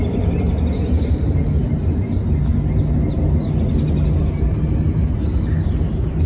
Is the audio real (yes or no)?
yes